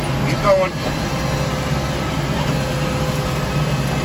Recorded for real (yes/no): yes